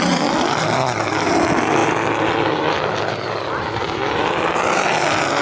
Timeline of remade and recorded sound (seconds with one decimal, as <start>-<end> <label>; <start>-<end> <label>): 0.0-5.4 recorded